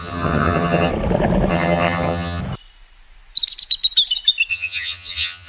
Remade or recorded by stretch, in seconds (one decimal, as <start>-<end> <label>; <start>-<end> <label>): 0.0-0.9 remade; 0.9-1.5 recorded; 1.5-2.4 remade; 2.4-4.5 recorded; 4.5-5.5 remade